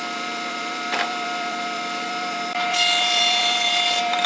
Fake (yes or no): yes